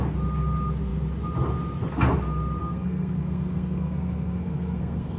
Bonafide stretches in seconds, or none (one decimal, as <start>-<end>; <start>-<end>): 0.0-2.6